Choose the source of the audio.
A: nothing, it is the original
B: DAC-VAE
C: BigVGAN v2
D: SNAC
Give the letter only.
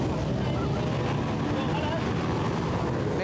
A